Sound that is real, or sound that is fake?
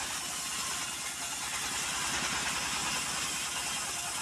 real